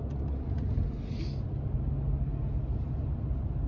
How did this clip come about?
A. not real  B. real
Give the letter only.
B